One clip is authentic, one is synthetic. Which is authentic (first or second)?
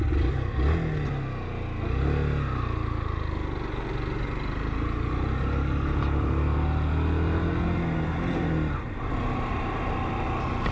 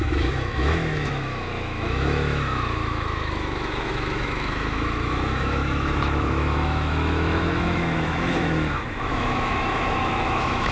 first